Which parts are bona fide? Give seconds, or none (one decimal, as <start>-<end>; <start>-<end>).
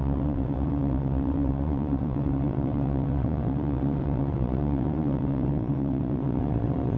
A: none